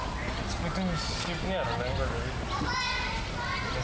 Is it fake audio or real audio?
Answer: real